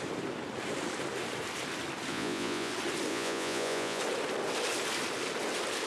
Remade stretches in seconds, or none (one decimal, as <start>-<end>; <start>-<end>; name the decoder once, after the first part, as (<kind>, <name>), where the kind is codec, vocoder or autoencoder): 2.1-2.7 (vocoder, Vocos); 3.1-4.0